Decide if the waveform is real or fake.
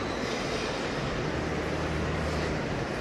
real